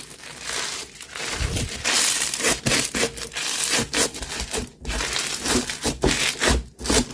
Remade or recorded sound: recorded